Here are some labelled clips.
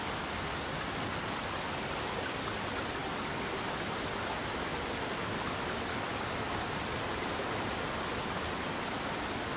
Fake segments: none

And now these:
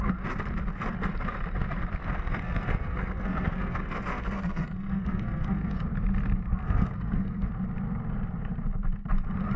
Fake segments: 2.0-5.8 (codec, SNAC); 6.6-7.5